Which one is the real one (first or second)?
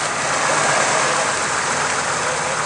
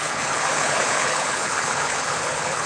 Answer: first